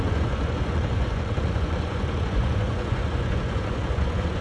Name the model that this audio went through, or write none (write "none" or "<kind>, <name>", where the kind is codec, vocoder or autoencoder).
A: vocoder, Vocos